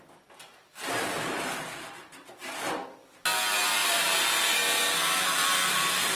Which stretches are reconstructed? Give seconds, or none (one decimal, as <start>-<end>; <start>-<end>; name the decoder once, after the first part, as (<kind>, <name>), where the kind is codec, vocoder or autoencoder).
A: 0.5-2.3 (vocoder, BigVGAN v2); 3.8-6.1

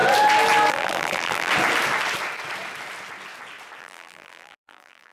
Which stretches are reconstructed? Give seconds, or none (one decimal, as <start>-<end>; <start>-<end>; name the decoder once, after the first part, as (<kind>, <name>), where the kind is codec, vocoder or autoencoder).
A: 0.7-1.5 (vocoder, BigVGAN v2); 3.8-5.1

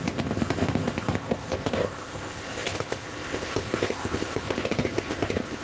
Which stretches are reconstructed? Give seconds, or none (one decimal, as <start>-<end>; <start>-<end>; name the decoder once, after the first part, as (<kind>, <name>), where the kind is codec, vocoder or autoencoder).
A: 0.0-5.6 (codec, ZipCodec)

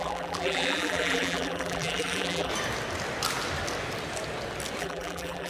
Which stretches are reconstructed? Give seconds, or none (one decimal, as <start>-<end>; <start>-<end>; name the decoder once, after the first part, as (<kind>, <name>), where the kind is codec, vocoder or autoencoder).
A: 0.0-2.5 (vocoder, BigVGAN v2); 4.8-5.5

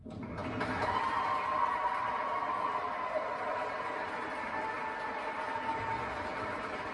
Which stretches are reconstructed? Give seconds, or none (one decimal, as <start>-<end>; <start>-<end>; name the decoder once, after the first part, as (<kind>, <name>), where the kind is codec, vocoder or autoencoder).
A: none

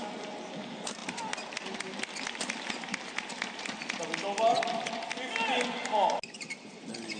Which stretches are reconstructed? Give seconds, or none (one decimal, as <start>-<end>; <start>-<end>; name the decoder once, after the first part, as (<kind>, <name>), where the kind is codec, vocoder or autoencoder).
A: none

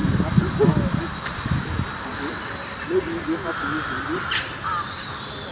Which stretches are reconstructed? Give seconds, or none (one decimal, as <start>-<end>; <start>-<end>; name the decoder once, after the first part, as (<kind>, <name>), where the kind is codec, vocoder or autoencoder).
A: none